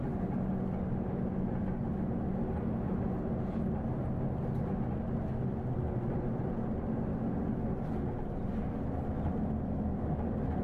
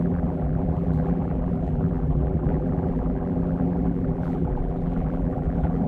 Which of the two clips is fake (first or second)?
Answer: second